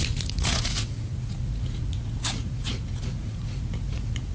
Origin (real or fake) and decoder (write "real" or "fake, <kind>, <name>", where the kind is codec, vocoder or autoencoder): fake, vocoder, Vocos